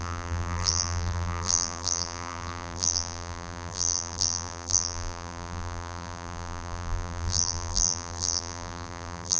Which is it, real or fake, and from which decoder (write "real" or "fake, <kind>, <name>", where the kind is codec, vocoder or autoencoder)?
fake, vocoder, BigVGAN v2